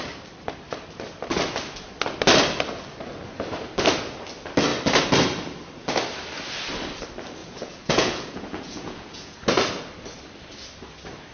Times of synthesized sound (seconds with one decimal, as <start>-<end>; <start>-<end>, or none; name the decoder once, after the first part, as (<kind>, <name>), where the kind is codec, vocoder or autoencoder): 7.4-9.4 (vocoder, Vocos)